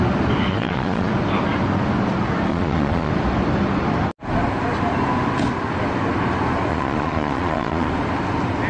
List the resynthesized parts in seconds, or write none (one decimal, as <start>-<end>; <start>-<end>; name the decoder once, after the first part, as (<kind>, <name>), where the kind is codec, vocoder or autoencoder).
0.5-1.1 (vocoder, Vocos); 2.5-3.1; 6.7-7.9